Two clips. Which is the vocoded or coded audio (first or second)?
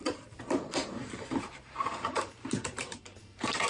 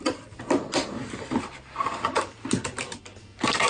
first